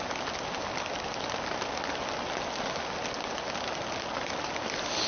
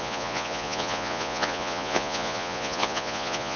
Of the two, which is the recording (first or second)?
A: first